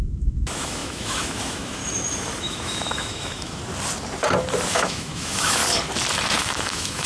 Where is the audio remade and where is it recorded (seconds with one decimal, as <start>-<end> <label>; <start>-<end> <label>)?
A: 0.0-1.8 remade; 1.8-2.4 recorded; 2.4-3.6 remade; 3.6-4.7 recorded; 4.7-5.6 remade; 5.6-6.3 recorded; 6.3-7.1 remade